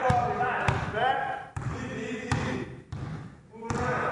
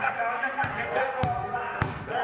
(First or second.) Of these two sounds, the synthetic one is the second